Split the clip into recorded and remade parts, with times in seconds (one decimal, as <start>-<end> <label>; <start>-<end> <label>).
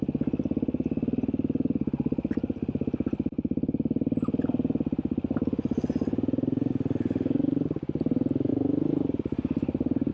0.0-8.5 recorded; 8.5-10.1 remade